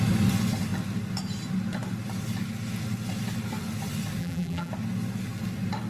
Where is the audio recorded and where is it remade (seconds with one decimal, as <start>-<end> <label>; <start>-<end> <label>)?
0.0-4.2 recorded; 4.2-4.7 remade; 4.7-5.9 recorded